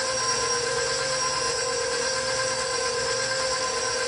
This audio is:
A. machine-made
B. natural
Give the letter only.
B